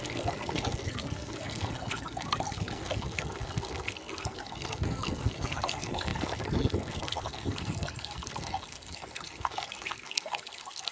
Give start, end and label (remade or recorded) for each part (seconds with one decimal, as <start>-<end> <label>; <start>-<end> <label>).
0.0-10.9 remade